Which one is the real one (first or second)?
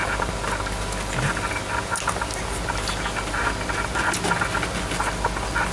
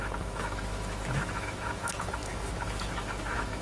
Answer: first